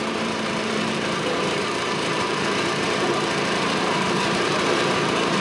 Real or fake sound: fake